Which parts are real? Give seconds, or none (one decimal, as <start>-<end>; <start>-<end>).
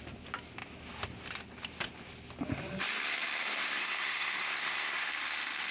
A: 0.0-3.4; 5.1-5.7